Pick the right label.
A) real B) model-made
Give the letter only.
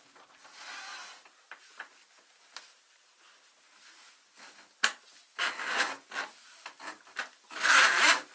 A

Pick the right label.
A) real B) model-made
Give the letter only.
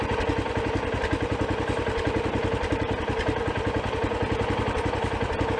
A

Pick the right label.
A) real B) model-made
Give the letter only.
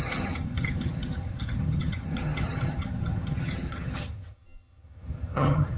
B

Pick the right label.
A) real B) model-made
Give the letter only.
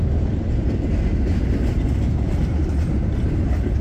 A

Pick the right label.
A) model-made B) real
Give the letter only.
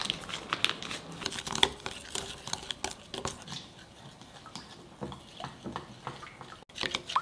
B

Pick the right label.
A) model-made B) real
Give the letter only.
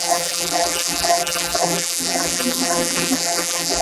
A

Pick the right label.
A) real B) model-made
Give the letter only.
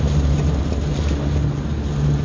A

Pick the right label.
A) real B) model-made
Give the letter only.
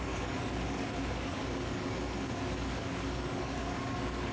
B